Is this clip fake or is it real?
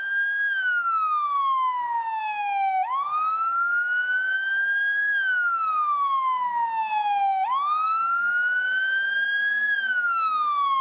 fake